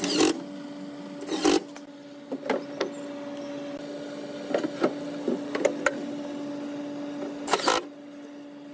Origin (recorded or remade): recorded